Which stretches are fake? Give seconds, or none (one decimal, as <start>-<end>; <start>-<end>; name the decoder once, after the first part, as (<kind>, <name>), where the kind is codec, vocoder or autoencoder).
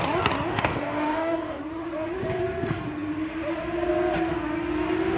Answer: 0.5-1.6 (codec, DAC)